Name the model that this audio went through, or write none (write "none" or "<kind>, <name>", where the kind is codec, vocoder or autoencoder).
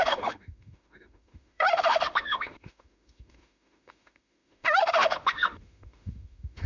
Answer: autoencoder, DAC-VAE